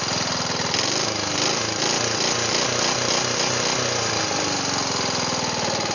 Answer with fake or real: real